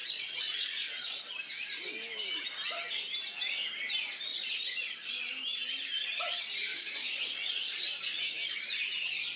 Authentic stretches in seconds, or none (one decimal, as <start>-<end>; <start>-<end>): 1.2-4.3; 5.3-6.7; 7.8-9.4

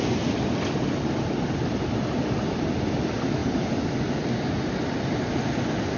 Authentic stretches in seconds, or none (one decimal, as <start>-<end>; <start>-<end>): 0.0-6.0

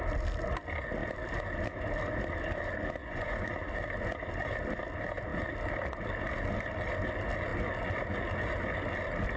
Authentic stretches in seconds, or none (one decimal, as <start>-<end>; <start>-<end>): 0.0-3.0; 3.5-9.4

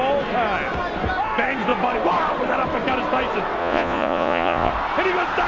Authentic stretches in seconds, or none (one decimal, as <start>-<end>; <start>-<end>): 0.0-3.6; 4.7-5.5

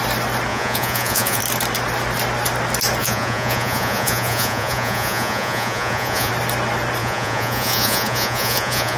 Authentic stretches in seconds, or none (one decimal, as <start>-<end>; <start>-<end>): 0.0-0.5; 1.4-3.0; 6.3-7.0

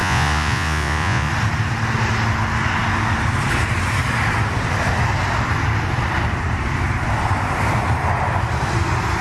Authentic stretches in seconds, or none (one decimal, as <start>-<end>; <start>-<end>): 1.3-9.2

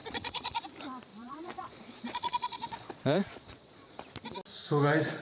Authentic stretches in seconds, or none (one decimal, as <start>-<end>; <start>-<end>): 0.6-1.1; 4.0-5.2

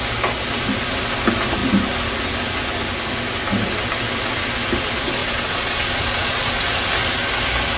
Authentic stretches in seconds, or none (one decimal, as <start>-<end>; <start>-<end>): 0.0-5.2; 6.5-7.8